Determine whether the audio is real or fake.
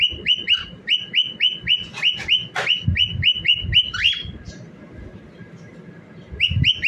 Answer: real